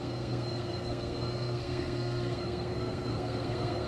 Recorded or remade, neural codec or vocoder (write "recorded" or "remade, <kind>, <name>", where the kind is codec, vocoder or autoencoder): remade, codec, SNAC